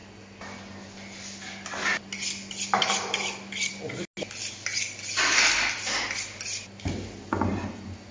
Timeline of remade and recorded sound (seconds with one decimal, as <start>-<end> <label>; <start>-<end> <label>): 0.0-8.1 recorded